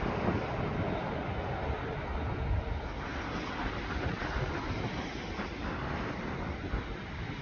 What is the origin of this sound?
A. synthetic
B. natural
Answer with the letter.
B